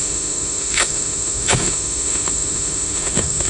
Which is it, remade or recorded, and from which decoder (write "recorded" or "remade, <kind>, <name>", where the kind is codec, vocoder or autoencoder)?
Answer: remade, autoencoder, DAC-VAE